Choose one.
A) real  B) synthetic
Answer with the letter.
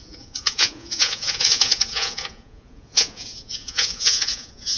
B